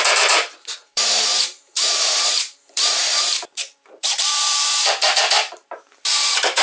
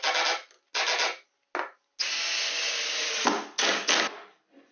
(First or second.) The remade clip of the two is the first